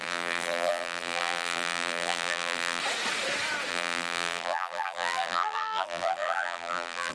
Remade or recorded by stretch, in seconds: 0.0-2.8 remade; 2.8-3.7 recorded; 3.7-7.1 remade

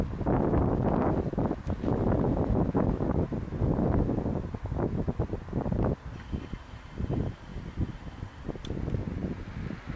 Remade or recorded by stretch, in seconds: 0.0-10.0 recorded

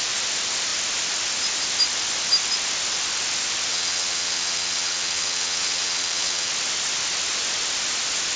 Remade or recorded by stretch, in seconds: 0.0-3.7 recorded; 3.7-6.5 remade; 6.5-8.4 recorded

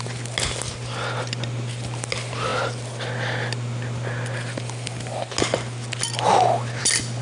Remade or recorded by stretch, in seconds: 0.0-7.2 recorded

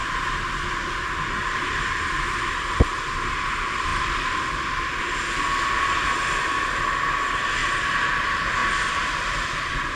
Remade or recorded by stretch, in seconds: 0.0-3.9 recorded; 3.9-5.0 remade; 5.0-7.6 recorded; 7.6-8.2 remade; 8.2-8.6 recorded; 8.6-10.0 remade

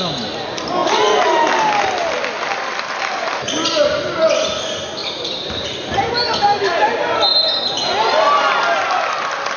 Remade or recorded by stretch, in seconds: 0.0-5.0 recorded; 5.0-6.1 remade; 6.1-9.6 recorded

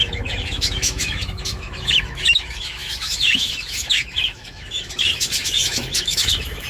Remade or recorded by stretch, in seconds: 0.0-6.7 remade

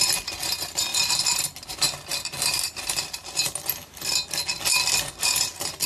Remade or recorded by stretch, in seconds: 0.0-5.9 recorded